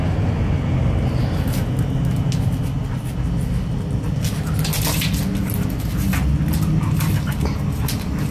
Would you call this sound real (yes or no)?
yes